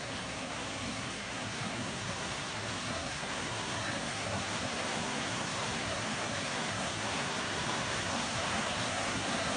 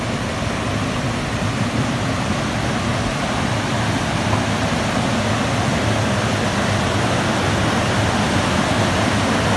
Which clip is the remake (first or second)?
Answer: first